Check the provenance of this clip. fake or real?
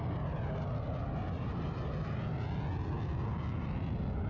real